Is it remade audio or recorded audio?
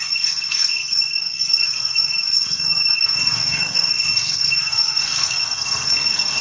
remade